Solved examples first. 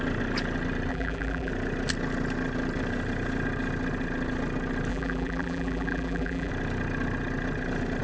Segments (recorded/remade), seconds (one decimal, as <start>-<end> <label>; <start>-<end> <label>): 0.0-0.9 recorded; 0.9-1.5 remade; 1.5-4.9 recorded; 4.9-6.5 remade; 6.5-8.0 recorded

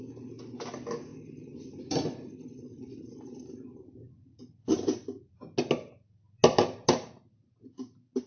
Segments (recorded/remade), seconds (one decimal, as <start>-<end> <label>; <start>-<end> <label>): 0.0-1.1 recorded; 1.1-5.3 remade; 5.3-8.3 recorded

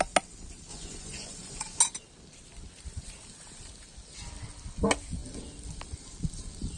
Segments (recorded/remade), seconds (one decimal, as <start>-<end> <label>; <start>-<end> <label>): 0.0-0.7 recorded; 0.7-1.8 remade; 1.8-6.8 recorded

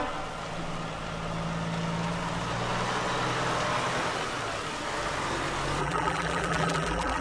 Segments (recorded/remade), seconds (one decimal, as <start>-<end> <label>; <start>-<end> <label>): 0.0-5.8 recorded; 5.8-7.2 remade

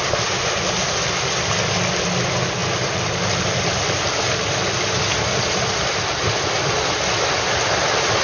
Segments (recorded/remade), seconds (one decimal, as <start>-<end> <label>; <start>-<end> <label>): 0.0-8.2 recorded

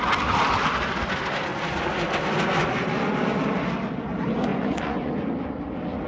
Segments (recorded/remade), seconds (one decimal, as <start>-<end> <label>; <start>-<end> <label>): 0.0-4.5 recorded; 4.5-5.1 remade; 5.1-6.1 recorded

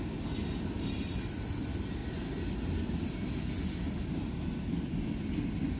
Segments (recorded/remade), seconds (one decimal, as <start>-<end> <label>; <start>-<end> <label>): 0.0-5.8 recorded

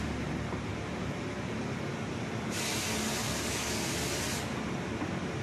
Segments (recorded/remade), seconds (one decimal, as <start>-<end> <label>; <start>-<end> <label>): 0.0-3.2 recorded; 3.2-4.1 remade; 4.1-5.4 recorded